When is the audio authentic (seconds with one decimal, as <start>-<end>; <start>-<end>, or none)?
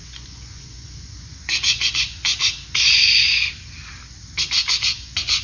2.3-4.8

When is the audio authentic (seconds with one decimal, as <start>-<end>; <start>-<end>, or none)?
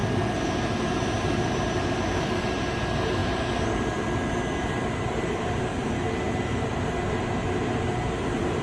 0.0-8.6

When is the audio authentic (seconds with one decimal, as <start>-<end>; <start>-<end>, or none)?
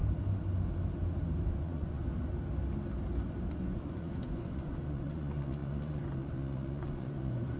0.0-1.5; 2.0-3.5